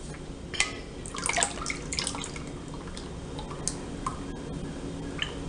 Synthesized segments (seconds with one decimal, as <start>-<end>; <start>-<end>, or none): none